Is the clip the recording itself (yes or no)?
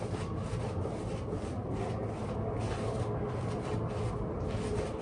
yes